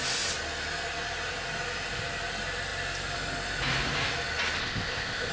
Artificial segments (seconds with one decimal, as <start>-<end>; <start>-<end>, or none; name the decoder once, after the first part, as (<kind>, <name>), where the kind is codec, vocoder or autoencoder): 4.6-5.3 (codec, ZipCodec)